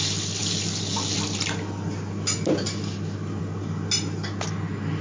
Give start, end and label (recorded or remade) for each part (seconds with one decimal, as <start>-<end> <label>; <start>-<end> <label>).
0.0-5.0 recorded